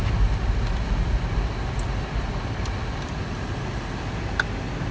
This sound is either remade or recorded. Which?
recorded